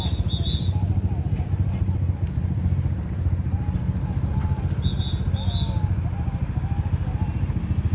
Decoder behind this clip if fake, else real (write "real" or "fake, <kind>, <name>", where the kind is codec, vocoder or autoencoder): real